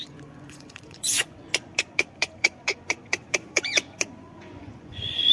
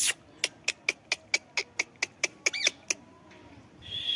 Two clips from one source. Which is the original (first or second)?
second